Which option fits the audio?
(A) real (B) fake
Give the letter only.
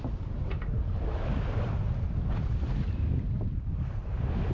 A